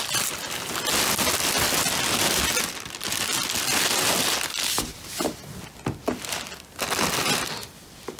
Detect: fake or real real